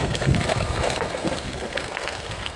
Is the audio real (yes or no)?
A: no